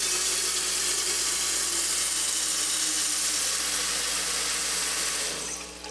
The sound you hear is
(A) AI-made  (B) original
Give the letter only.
B